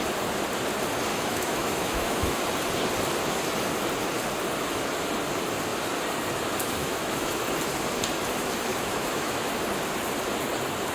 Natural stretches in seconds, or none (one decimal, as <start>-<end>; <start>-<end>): 0.0-1.1; 2.4-6.8; 7.4-8.7; 9.5-10.9